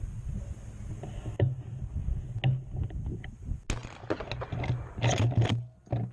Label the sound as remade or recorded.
recorded